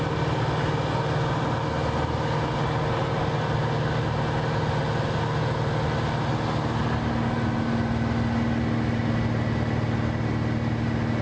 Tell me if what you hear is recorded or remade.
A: recorded